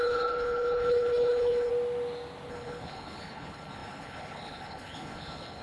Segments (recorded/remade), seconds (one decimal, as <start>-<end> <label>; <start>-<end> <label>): 0.0-1.7 remade; 1.7-2.5 recorded; 2.5-5.6 remade